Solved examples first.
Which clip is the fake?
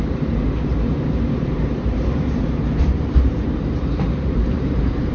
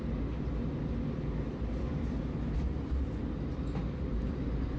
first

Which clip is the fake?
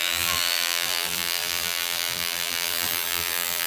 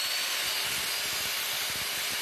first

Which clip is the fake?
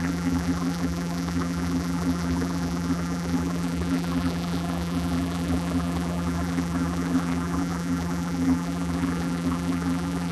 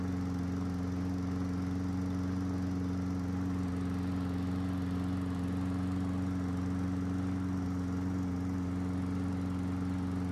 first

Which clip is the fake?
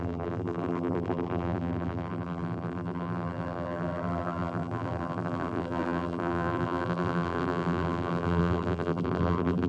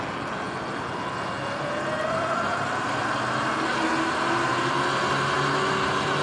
first